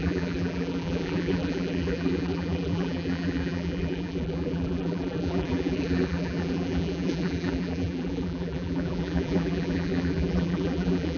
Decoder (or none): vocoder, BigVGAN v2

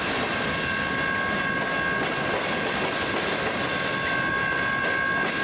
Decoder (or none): none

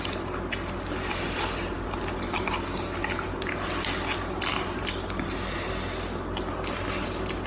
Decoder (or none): none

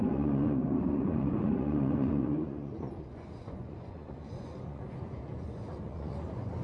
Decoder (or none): vocoder, Vocos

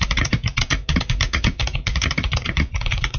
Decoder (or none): vocoder, Vocos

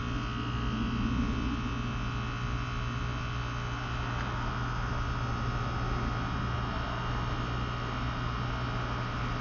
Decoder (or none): none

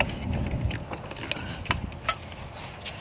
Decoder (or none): none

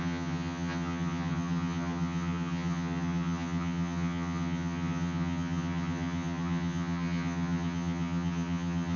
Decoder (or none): vocoder, HiFi-GAN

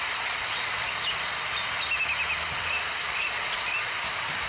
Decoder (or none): none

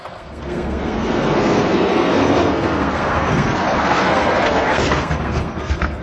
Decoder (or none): codec, SNAC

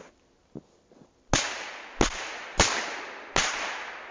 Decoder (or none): none